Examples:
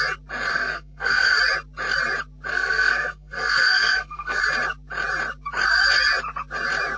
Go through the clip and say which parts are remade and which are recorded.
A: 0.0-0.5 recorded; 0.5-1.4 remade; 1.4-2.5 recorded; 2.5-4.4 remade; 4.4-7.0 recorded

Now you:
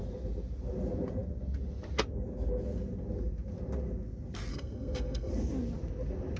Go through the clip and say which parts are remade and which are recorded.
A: 0.0-4.5 recorded; 4.5-5.3 remade; 5.3-6.4 recorded

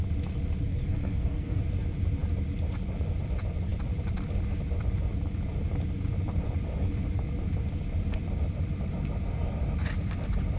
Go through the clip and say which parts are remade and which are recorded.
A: 0.0-0.7 recorded; 0.7-1.6 remade; 1.6-10.6 recorded

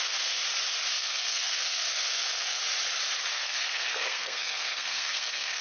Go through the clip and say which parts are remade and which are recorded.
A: 0.0-0.4 remade; 0.4-0.9 recorded; 0.9-2.6 remade; 2.6-3.3 recorded; 3.3-5.6 remade

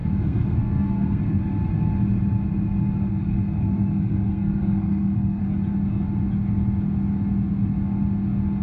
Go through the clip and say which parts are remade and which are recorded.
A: 0.0-1.2 remade; 1.2-3.1 recorded; 3.1-5.4 remade; 5.4-8.6 recorded

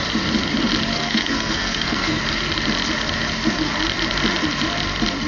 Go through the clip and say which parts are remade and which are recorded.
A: 0.0-0.9 recorded; 0.9-2.2 remade; 2.2-5.3 recorded